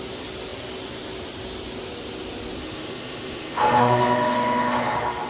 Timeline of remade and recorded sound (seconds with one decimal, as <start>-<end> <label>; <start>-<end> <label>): 0.0-2.6 recorded; 2.6-5.3 remade